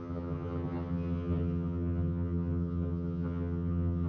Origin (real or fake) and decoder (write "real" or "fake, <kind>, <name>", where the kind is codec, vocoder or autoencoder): fake, vocoder, HiFi-GAN